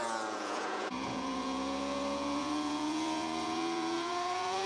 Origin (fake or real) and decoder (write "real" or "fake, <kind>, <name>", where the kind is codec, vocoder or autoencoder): fake, vocoder, Vocos